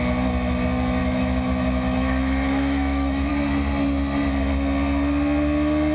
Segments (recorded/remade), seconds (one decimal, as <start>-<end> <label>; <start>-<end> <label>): 0.0-1.0 recorded; 1.0-3.3 remade; 3.3-5.9 recorded